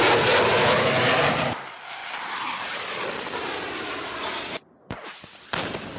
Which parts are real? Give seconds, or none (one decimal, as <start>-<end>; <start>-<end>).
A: 0.0-6.0